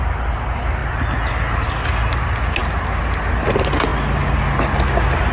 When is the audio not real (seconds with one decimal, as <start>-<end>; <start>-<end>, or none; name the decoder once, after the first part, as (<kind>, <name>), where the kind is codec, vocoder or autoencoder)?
none